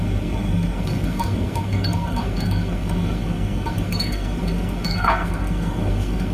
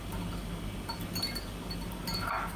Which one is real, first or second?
second